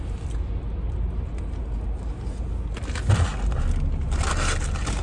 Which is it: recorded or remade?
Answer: recorded